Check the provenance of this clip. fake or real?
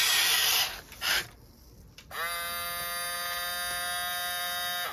real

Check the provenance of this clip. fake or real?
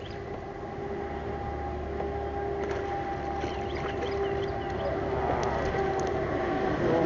real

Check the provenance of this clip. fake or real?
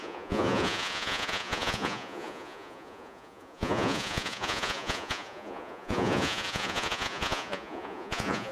fake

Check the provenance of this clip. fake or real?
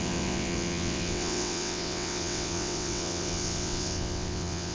fake